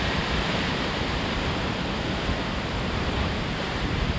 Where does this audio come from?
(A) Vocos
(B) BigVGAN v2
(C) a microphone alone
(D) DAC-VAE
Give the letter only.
B